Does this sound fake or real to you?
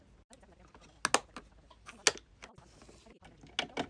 real